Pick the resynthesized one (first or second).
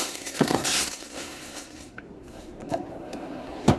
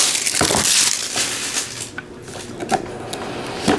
first